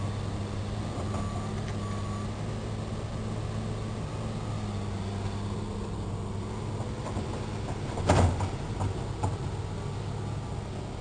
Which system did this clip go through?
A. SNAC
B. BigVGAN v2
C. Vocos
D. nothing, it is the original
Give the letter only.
D